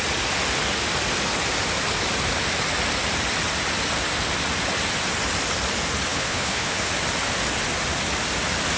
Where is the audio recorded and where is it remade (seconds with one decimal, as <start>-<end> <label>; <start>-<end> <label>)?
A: 0.0-6.1 recorded; 6.1-6.9 remade; 6.9-8.8 recorded